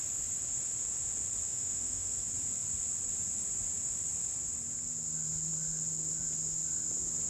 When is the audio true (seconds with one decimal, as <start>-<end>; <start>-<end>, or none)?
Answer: 0.0-1.5; 2.1-7.3